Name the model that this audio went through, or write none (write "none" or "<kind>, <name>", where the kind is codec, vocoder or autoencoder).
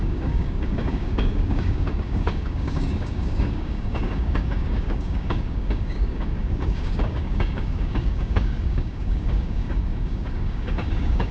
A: codec, DAC